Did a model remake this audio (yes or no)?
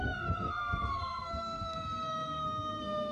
yes